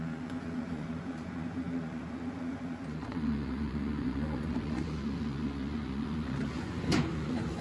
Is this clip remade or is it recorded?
remade